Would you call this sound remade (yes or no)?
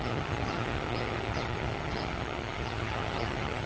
yes